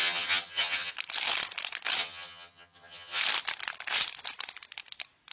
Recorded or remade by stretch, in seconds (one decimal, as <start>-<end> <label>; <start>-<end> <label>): 0.0-0.9 remade; 0.9-2.0 recorded; 2.0-3.2 remade; 3.2-5.3 recorded